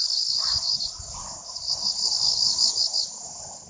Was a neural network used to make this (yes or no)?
no